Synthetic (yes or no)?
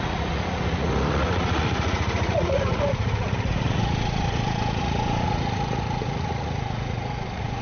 yes